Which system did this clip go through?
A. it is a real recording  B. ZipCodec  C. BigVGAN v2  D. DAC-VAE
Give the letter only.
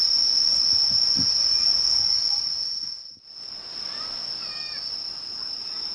A